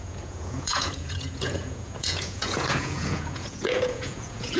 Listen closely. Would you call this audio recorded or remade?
remade